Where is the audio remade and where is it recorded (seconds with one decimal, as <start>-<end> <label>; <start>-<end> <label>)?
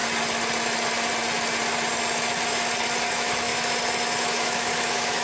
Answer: 0.0-3.1 recorded; 3.1-3.5 remade; 3.5-4.2 recorded; 4.2-5.2 remade